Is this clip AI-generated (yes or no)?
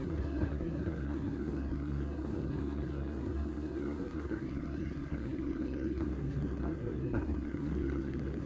yes